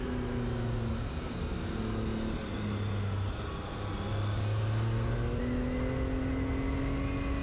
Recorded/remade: recorded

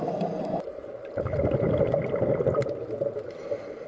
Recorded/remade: recorded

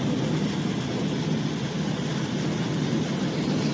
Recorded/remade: recorded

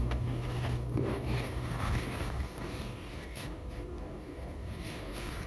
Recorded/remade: remade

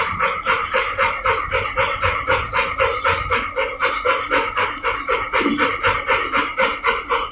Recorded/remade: remade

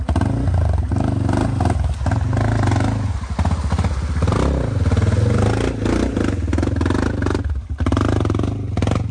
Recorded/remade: recorded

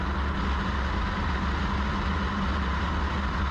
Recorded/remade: recorded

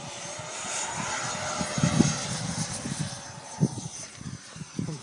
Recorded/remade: recorded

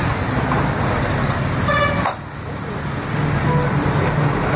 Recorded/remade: recorded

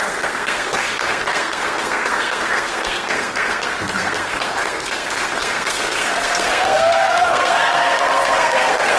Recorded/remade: remade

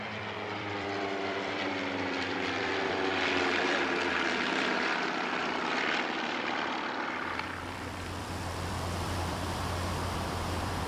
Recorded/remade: remade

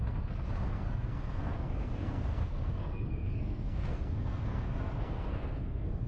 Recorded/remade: remade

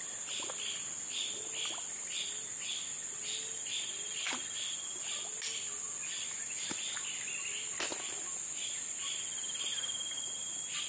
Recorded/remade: recorded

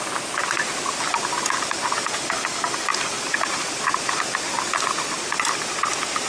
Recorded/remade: recorded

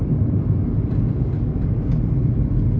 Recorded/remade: recorded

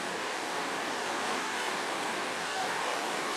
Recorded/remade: remade